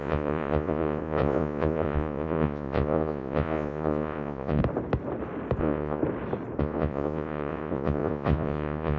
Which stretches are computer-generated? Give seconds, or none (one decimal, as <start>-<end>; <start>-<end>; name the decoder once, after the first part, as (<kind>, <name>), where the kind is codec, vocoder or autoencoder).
0.0-4.6 (vocoder, Vocos); 5.6-6.0; 6.6-9.0